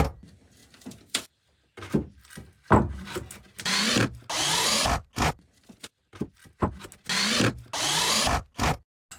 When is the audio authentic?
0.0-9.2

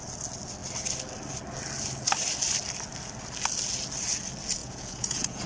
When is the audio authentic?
0.0-4.6

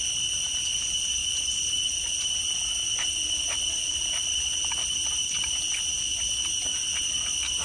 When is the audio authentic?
0.0-7.6

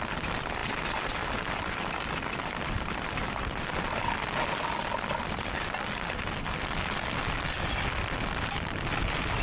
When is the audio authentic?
0.0-9.4

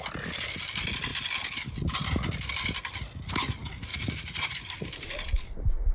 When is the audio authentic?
0.0-3.9; 4.6-5.9

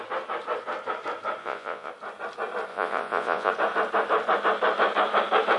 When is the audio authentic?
0.0-1.4; 1.9-2.7; 3.5-5.6

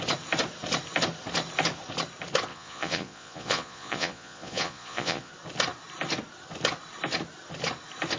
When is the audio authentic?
0.0-2.5; 5.3-8.2